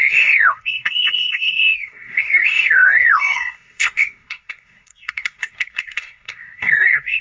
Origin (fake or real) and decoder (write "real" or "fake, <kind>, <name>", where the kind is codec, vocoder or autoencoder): fake, codec, SNAC